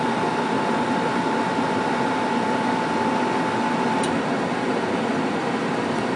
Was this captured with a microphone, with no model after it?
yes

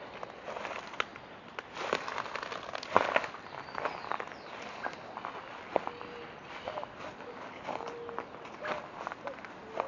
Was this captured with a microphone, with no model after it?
yes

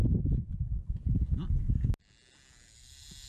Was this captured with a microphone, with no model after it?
yes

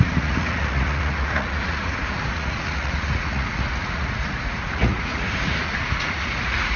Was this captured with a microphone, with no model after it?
no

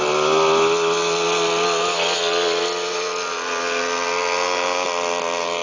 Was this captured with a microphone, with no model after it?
yes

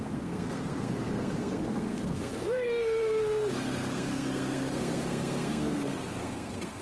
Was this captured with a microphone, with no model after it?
no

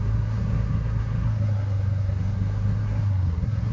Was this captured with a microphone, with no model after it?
no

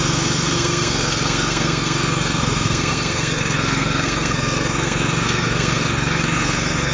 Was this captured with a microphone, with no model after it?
no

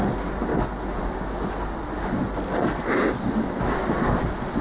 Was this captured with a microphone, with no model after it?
yes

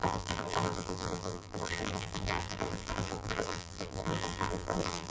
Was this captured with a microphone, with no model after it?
no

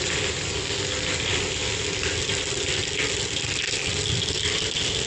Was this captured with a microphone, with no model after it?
yes